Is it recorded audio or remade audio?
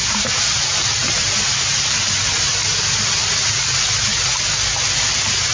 recorded